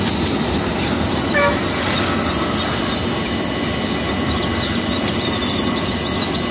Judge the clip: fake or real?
real